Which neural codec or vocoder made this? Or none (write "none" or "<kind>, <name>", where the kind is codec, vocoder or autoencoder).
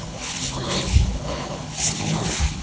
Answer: codec, HILCodec